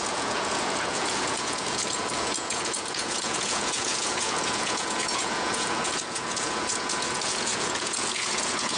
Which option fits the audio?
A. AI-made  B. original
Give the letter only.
A